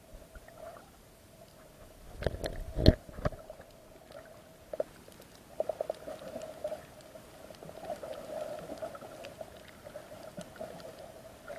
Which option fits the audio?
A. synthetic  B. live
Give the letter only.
B